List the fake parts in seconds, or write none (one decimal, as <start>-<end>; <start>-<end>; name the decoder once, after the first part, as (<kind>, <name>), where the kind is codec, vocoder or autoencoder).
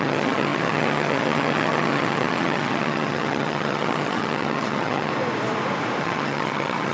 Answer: 0.0-5.1 (vocoder, HiFi-GAN); 6.0-6.9